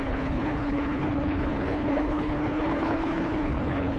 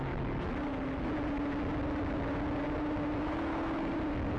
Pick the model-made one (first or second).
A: first